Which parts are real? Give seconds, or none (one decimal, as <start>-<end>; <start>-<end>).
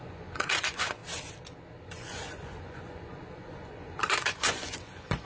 1.0-1.8